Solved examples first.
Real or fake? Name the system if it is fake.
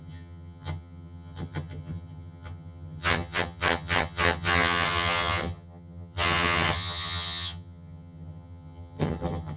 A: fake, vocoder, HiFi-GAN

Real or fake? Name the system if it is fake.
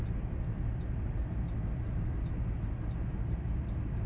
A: real